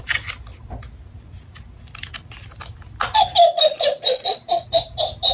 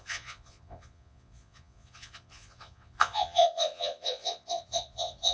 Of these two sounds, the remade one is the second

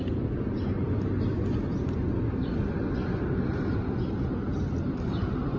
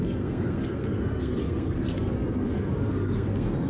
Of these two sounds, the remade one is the second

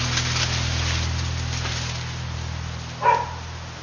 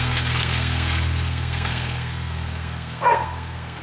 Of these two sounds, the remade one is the second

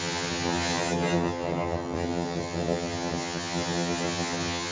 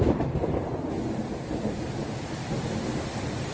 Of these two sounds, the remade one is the first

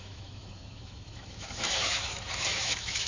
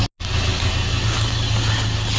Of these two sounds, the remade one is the first